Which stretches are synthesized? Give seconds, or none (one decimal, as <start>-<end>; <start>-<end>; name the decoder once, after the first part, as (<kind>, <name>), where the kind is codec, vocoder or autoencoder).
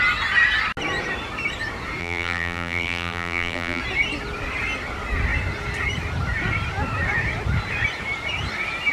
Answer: 2.0-3.8 (vocoder, BigVGAN v2)